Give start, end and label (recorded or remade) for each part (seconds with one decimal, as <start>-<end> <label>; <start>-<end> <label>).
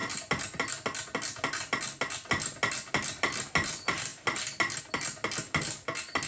0.0-6.3 recorded